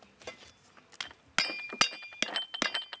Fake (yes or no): no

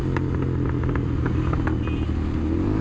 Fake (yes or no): no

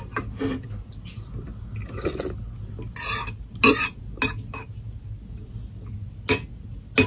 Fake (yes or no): no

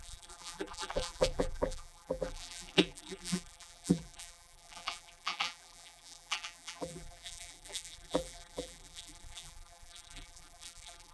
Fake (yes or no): yes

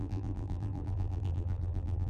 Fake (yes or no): yes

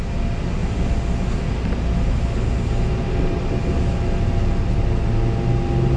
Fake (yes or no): no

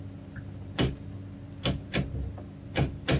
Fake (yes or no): no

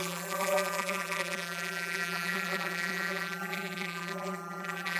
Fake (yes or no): yes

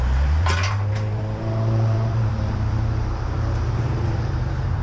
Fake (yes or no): yes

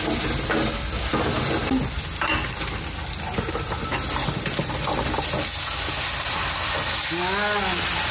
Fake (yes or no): no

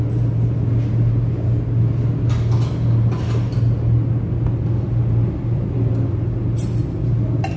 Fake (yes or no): no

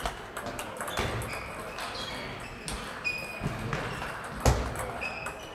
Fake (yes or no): no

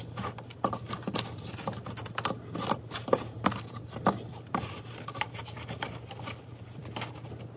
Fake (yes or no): no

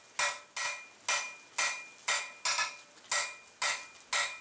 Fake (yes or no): no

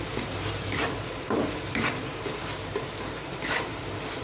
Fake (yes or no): yes